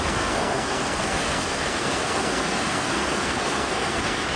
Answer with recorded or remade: remade